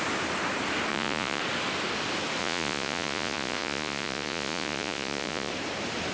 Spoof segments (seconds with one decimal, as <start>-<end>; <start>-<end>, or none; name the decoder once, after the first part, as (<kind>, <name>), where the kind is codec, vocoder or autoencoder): 0.9-1.4 (vocoder, Vocos); 2.4-5.5